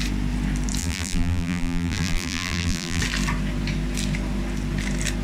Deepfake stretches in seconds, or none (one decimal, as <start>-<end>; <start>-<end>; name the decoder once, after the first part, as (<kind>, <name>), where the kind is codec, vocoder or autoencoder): 0.8-3.0 (vocoder, BigVGAN v2)